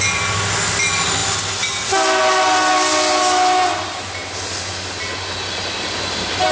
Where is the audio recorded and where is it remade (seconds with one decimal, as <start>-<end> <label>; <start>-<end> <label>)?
0.0-6.5 recorded